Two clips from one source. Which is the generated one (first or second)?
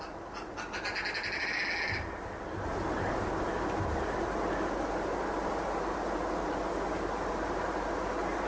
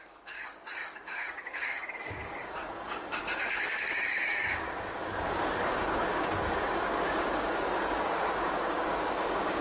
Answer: second